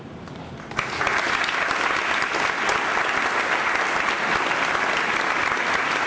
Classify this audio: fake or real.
real